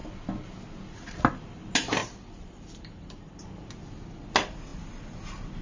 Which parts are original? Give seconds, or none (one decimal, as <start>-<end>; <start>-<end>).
0.0-2.0; 3.4-5.6